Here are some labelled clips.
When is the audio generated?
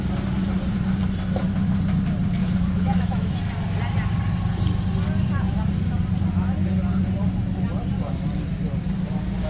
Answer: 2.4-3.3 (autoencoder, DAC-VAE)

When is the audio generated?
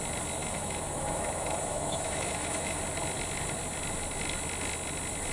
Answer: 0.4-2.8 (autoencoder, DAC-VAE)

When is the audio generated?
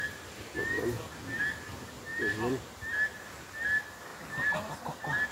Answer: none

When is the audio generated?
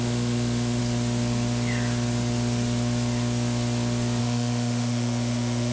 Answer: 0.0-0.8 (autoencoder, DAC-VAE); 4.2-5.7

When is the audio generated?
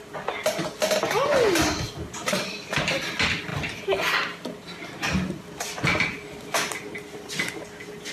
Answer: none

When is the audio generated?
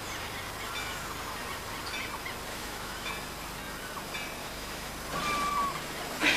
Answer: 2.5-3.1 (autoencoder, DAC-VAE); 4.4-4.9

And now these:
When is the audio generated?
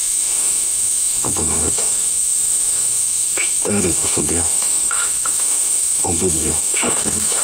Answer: 0.0-7.4 (autoencoder, DAC-VAE)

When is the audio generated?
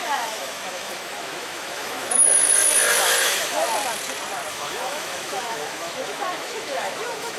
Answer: 0.0-2.2 (autoencoder, DAC-VAE); 3.2-3.6; 4.5-7.4